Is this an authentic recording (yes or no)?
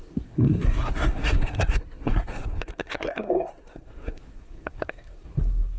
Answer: no